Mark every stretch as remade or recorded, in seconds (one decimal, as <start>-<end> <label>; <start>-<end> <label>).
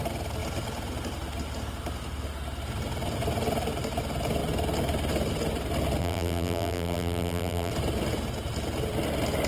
0.0-6.0 recorded; 6.0-7.7 remade; 7.7-9.5 recorded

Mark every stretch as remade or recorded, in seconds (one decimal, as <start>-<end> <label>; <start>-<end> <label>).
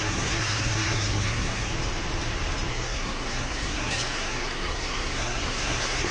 0.0-1.7 remade; 1.7-2.7 recorded; 2.7-6.1 remade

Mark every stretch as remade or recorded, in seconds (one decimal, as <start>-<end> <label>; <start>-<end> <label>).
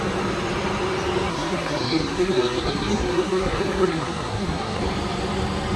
0.0-1.3 recorded; 1.3-4.8 remade; 4.8-5.8 recorded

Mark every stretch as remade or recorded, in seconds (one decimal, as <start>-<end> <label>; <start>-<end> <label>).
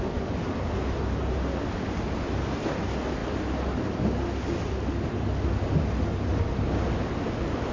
0.0-7.7 recorded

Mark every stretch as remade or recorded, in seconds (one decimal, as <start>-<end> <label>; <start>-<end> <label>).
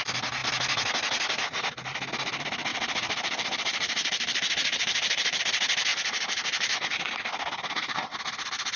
0.0-2.7 recorded; 2.7-5.4 remade; 5.4-5.9 recorded; 5.9-7.1 remade; 7.1-8.8 recorded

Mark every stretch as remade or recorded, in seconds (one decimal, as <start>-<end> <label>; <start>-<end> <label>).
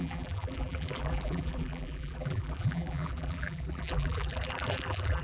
0.0-5.2 remade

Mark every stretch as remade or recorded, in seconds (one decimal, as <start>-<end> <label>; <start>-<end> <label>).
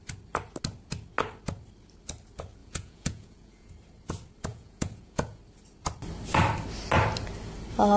0.0-2.6 recorded; 2.6-3.7 remade; 3.7-4.5 recorded; 4.5-5.4 remade; 5.4-8.0 recorded